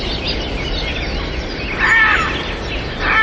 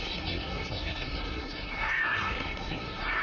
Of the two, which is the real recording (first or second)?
first